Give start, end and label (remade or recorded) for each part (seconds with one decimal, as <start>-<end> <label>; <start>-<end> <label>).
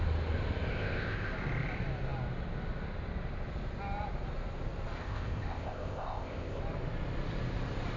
0.0-0.7 recorded; 0.7-1.3 remade; 1.3-5.0 recorded; 5.0-6.6 remade; 6.6-8.0 recorded